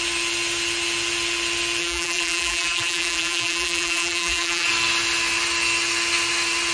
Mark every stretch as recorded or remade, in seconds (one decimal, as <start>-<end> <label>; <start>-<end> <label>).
0.0-1.8 recorded; 1.8-4.7 remade; 4.7-6.7 recorded